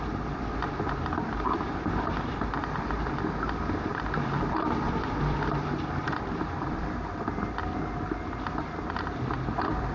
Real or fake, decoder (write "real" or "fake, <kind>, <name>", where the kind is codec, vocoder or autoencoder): fake, vocoder, BigVGAN v2